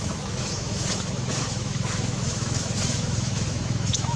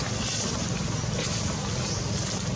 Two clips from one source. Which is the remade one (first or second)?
first